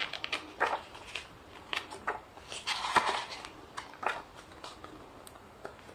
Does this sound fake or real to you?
real